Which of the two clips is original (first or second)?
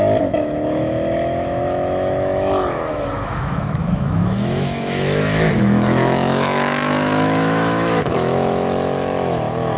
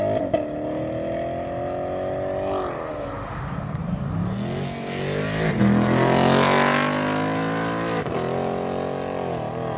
second